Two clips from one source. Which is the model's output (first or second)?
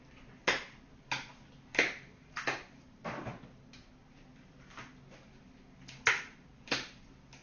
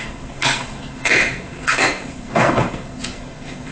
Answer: second